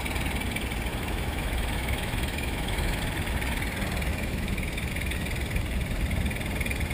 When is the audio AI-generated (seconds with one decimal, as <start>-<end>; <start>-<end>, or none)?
0.9-3.0; 4.1-4.9